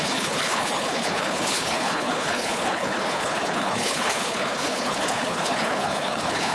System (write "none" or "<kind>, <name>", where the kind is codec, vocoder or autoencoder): codec, HILCodec